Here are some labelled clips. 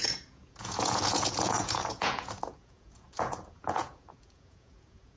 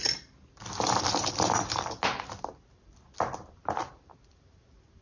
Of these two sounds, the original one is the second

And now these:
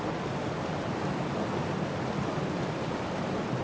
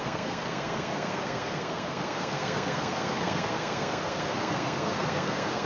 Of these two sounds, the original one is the first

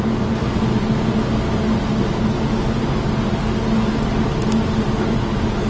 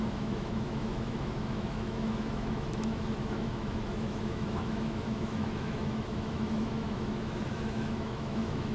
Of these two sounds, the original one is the first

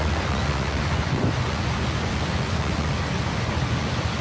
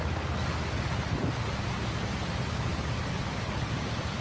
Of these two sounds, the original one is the second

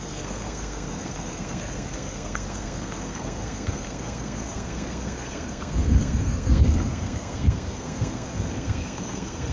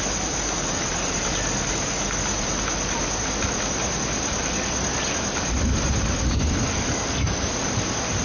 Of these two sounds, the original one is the second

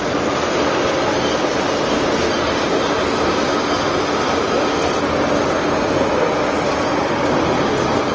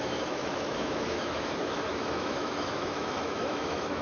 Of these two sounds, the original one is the first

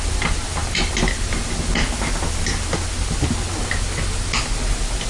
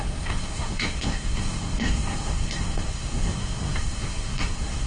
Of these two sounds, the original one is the first